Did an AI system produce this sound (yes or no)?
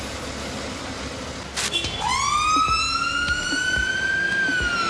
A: no